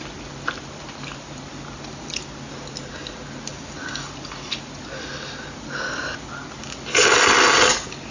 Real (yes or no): yes